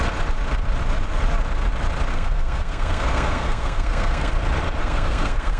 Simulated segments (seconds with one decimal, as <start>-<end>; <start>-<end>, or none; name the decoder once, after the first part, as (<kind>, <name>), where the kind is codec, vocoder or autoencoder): 2.1-4.3 (codec, SNAC); 4.8-5.6